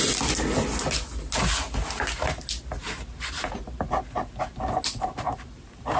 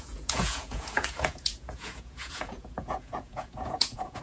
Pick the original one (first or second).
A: first